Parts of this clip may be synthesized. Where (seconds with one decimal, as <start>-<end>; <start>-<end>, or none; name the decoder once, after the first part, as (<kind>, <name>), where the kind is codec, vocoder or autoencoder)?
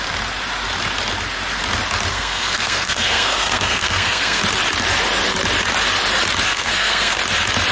2.1-4.4 (codec, SNAC); 6.5-7.2